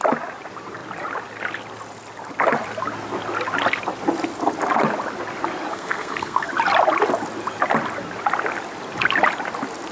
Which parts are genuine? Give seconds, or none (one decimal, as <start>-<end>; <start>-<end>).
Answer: 0.0-5.7; 6.5-9.9